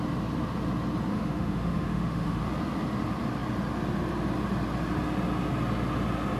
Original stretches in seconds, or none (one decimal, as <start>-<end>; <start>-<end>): 0.0-1.1; 2.4-6.4